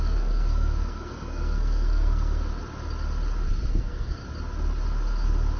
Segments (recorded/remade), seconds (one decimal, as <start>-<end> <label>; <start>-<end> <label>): 0.0-2.5 remade; 2.5-3.7 recorded; 3.7-4.2 remade; 4.2-5.6 recorded